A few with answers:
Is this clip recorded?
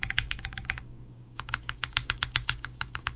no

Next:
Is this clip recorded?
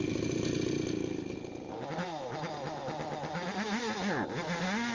yes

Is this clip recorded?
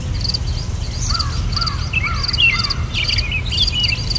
yes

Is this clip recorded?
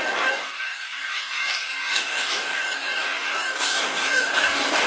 no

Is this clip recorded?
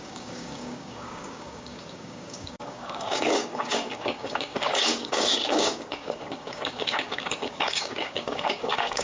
no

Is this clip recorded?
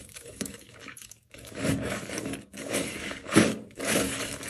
no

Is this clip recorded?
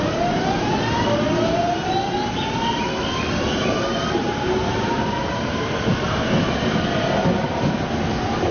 yes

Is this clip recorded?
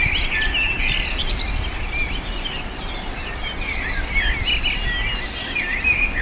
yes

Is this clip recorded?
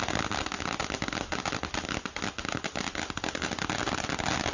yes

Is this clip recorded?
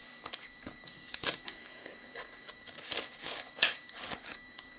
no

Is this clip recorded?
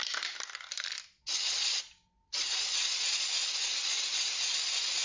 yes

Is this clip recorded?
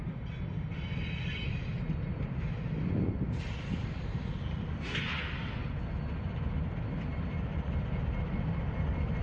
yes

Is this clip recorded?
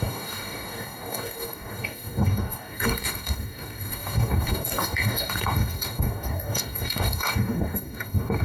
no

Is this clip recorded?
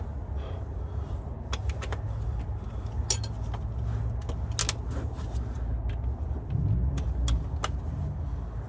yes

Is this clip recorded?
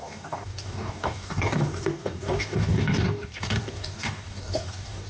no